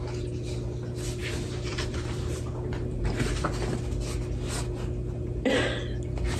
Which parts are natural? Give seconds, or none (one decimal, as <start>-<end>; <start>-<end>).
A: 0.0-1.2; 3.5-6.4